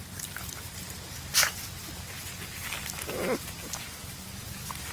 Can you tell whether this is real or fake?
real